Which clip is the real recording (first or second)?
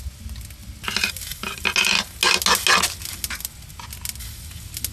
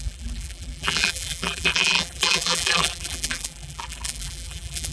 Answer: first